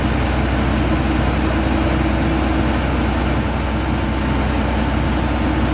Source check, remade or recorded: recorded